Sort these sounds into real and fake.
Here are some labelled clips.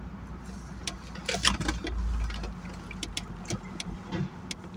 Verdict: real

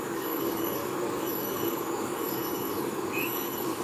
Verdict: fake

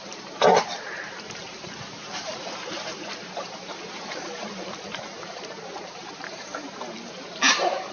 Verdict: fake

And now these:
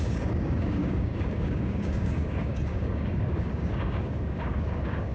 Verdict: fake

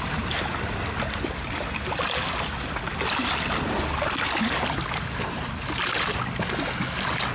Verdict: real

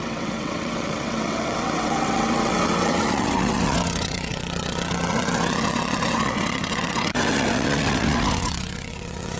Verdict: fake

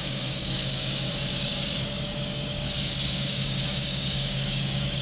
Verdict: fake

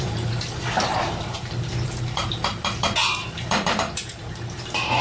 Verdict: fake